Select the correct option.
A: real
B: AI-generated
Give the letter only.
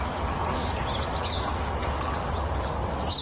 A